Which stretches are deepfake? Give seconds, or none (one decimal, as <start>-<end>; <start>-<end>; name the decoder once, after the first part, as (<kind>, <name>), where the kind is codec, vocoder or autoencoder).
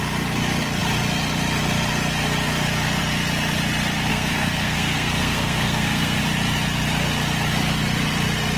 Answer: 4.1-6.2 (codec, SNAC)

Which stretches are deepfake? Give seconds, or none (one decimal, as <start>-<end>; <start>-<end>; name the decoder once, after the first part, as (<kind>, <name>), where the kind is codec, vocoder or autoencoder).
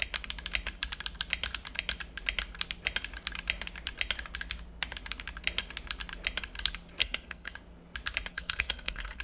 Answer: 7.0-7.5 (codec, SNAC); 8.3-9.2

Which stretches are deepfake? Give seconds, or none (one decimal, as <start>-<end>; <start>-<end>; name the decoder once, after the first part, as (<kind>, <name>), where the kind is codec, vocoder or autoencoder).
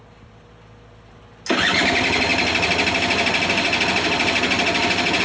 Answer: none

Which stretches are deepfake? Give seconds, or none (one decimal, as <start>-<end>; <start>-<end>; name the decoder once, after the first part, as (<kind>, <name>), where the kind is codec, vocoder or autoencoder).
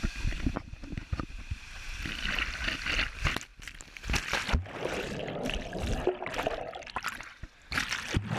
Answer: none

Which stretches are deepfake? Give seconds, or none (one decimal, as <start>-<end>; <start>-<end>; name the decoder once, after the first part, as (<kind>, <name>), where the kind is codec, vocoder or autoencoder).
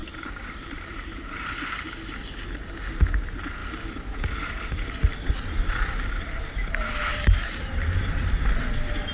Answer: 0.0-1.5 (vocoder, BigVGAN v2); 7.1-7.8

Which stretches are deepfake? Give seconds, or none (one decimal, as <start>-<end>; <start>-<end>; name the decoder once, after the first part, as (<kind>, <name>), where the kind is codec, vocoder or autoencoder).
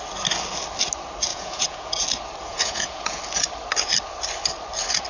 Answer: 1.3-1.9 (vocoder, Vocos); 2.5-3.2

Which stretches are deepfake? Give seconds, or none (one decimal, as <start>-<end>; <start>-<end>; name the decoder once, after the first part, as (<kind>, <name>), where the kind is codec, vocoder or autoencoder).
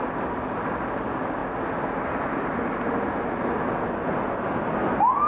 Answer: none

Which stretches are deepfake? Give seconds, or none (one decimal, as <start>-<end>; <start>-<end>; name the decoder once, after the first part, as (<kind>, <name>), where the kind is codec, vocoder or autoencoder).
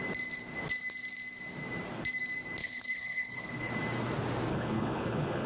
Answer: 2.6-3.7 (codec, HILCodec); 4.5-5.5